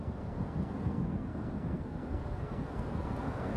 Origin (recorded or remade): remade